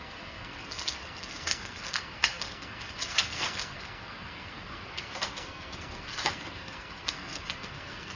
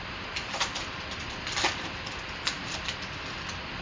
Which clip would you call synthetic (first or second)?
first